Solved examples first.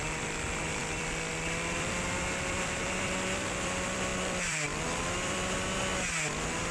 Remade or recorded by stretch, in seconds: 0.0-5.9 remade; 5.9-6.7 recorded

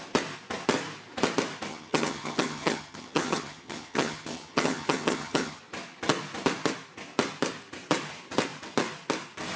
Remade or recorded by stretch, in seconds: 0.0-1.7 recorded; 1.7-5.6 remade; 5.6-9.6 recorded

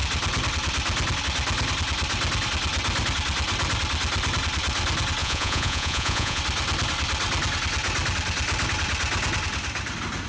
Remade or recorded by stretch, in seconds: 0.0-5.2 recorded; 5.2-6.4 remade; 6.4-10.3 recorded

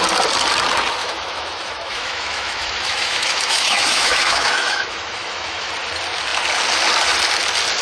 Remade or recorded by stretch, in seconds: 0.0-1.0 recorded; 1.0-5.7 remade; 5.7-7.8 recorded

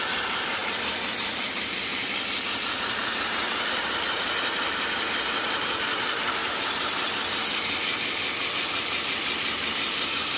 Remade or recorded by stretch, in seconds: 0.0-1.9 remade; 1.9-5.5 recorded; 5.5-6.4 remade; 6.4-8.5 recorded; 8.5-10.4 remade